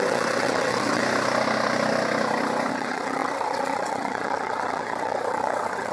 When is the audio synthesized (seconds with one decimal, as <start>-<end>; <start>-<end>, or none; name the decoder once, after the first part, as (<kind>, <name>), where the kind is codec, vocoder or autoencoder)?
0.0-1.0 (vocoder, WaveNeXt); 2.7-5.9

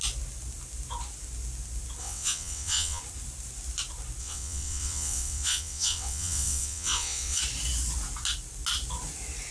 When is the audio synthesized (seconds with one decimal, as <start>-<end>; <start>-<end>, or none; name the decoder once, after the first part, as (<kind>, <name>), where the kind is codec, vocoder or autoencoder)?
2.0-3.0 (vocoder, WaveNeXt); 4.2-7.4